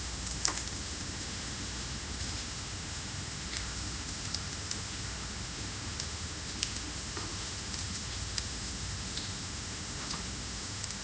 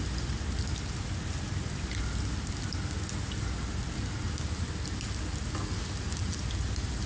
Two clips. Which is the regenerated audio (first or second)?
first